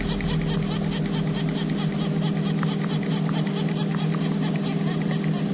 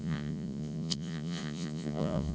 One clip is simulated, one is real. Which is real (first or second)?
first